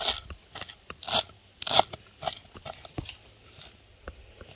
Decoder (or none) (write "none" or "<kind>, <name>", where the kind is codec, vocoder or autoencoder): none